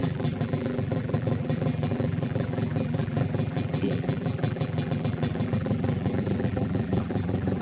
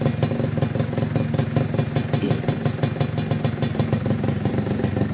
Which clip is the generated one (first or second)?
first